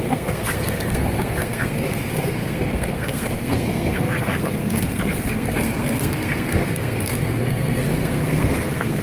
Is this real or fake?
fake